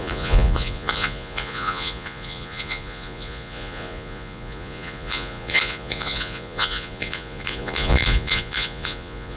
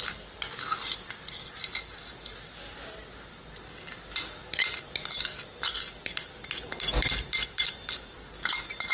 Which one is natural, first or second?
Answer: second